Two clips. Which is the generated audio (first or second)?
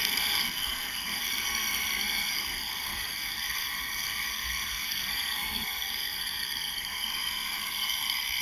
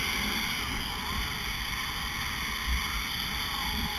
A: first